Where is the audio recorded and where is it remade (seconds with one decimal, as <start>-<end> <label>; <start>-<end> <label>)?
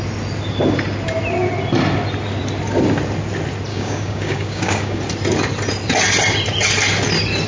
0.0-3.7 recorded; 3.7-5.0 remade; 5.0-7.5 recorded